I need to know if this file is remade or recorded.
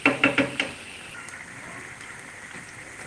remade